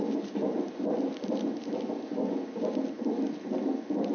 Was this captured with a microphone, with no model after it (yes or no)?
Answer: yes